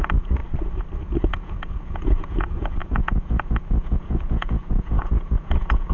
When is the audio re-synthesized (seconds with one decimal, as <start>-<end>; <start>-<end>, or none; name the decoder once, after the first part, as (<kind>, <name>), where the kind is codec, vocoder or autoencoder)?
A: 0.0-0.4 (vocoder, Vocos); 1.0-5.9